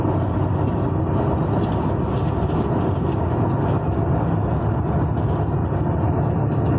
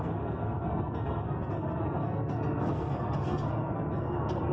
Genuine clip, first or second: first